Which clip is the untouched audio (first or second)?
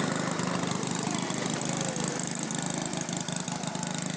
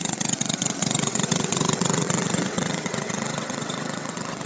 first